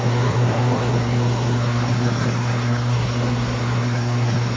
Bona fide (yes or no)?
no